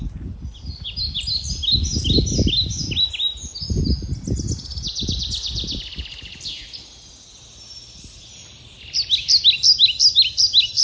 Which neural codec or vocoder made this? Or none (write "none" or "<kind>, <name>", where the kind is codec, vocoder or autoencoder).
none